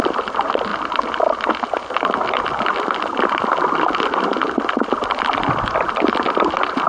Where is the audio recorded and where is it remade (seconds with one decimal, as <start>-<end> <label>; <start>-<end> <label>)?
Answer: 0.0-0.7 remade; 0.7-4.8 recorded; 4.8-6.9 remade